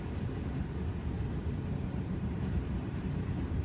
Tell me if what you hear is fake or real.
fake